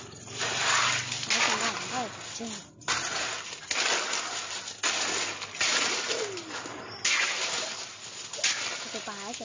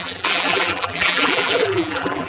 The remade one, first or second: second